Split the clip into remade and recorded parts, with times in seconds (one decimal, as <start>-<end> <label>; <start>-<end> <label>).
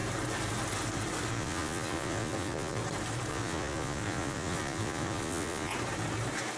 0.0-1.3 recorded; 1.3-2.8 remade; 2.8-3.3 recorded; 3.3-5.7 remade; 5.7-6.6 recorded